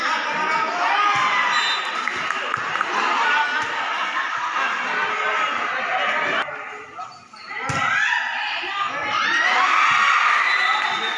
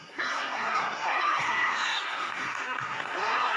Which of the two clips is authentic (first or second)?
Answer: first